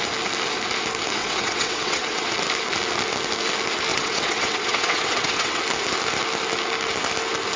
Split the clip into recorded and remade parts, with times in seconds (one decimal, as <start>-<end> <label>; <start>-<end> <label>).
0.0-1.2 recorded; 1.2-2.3 remade; 2.3-3.9 recorded; 3.9-5.6 remade; 5.6-7.6 recorded

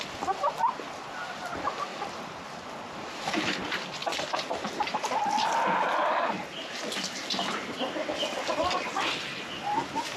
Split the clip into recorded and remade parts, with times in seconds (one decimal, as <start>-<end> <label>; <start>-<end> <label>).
0.0-1.9 recorded; 1.9-2.4 remade; 2.4-4.0 recorded; 4.0-5.2 remade; 5.2-10.2 recorded

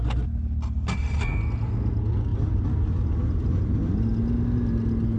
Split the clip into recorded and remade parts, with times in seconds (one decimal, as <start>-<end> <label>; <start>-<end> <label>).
0.0-2.3 recorded; 2.3-3.9 remade; 3.9-5.2 recorded

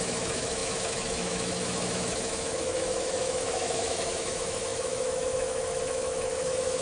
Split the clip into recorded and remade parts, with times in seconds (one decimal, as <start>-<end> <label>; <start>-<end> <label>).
0.0-6.8 remade

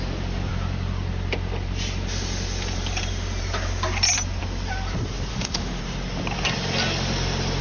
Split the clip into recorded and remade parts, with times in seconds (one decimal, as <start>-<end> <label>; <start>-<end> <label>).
0.0-5.3 recorded; 5.3-5.8 remade; 5.8-7.6 recorded

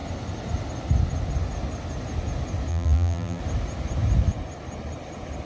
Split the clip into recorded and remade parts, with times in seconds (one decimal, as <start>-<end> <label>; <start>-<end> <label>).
0.0-2.7 recorded; 2.7-3.4 remade; 3.4-5.5 recorded

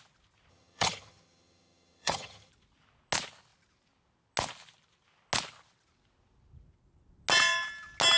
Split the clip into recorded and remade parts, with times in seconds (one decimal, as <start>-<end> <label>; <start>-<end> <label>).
0.0-0.5 recorded; 0.5-2.5 remade; 2.5-8.2 recorded

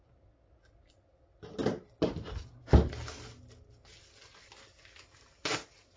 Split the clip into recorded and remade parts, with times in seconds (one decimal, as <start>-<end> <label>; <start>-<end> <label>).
0.0-6.0 recorded